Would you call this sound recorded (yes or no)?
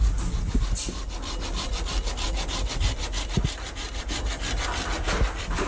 yes